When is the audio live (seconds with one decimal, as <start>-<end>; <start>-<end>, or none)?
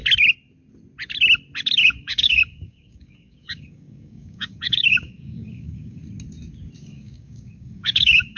0.0-1.8; 6.0-6.8